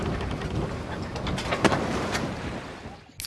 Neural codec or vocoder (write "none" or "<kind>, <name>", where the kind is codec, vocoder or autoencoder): none